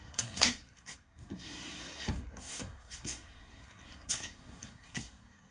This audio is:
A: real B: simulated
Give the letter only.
B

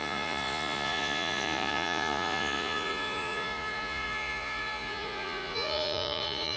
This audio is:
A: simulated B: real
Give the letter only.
A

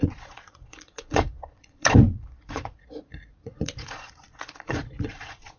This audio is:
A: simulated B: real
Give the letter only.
A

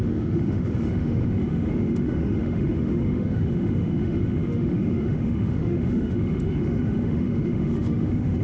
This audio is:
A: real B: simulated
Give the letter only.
B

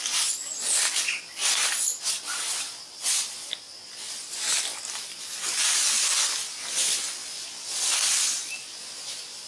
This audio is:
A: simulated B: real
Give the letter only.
B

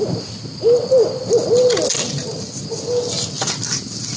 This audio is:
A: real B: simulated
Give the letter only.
A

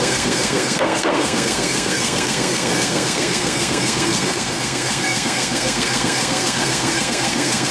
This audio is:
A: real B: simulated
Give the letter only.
B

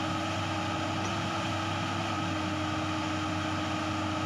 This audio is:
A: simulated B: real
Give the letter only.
B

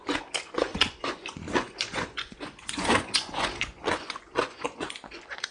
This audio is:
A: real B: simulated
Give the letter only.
B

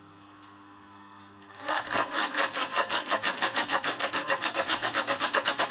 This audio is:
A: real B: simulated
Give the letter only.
B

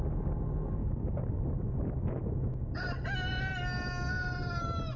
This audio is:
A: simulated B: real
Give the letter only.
B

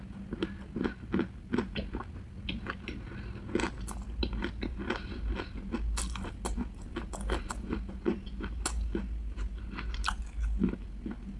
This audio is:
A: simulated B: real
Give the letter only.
B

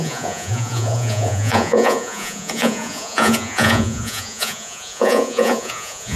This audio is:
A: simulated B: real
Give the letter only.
A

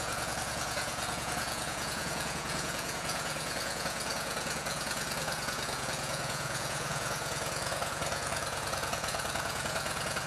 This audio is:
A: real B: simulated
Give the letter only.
B